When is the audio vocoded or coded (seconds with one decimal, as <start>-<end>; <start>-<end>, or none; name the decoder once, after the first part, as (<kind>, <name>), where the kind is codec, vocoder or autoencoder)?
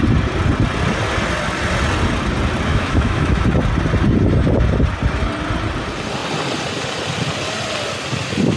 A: 2.7-3.4 (autoencoder, DAC-VAE)